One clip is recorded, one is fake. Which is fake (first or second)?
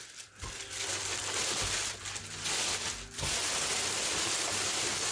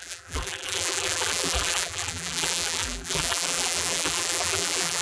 second